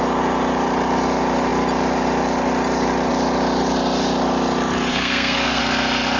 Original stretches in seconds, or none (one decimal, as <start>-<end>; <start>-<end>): 0.0-4.9; 5.6-6.2

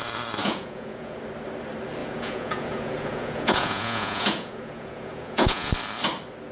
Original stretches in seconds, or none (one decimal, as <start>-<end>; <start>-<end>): 0.0-0.4; 1.2-2.0; 5.7-6.5

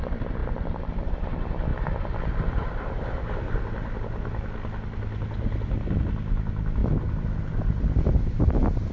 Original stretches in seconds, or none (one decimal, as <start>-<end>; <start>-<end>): 0.0-6.8; 7.5-8.9

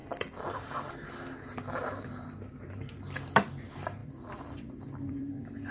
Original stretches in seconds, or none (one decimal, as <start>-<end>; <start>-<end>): 0.9-4.0; 5.3-5.7

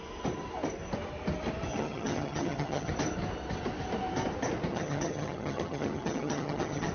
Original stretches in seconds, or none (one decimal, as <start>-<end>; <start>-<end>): 0.0-1.7; 2.9-4.7

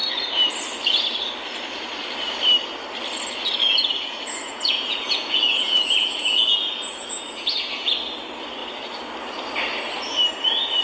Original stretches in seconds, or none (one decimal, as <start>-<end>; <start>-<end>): 0.0-3.6; 7.9-10.8